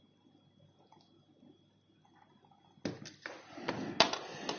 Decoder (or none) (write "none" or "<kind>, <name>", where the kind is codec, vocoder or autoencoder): none